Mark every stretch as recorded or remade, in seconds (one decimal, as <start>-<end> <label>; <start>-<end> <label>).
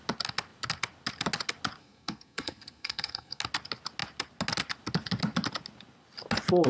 0.0-1.8 recorded; 1.8-3.4 remade; 3.4-6.7 recorded